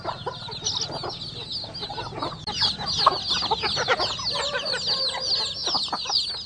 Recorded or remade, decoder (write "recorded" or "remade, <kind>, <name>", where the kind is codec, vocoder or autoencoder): recorded